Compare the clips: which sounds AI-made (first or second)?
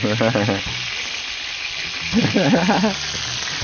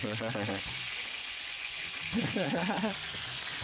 second